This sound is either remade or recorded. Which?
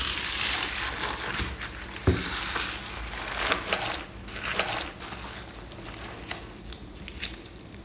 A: recorded